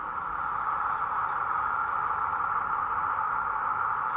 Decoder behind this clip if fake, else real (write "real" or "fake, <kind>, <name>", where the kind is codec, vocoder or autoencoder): real